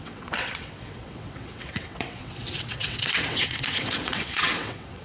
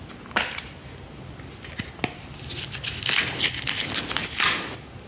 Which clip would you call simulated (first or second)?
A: first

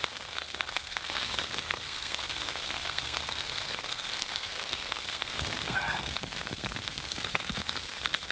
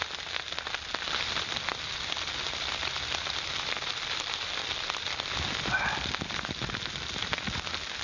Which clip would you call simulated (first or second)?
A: first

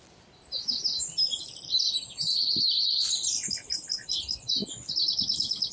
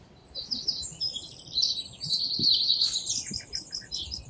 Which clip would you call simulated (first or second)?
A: second